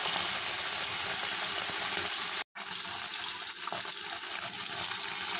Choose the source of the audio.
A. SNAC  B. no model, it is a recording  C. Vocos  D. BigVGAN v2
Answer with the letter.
B